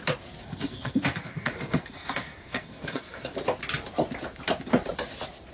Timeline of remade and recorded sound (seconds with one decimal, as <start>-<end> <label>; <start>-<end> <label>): 0.0-0.4 recorded; 0.4-3.3 remade; 3.3-5.5 recorded